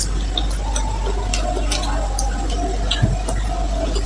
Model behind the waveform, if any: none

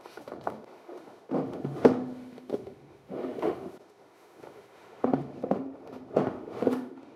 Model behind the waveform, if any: autoencoder, DAC-VAE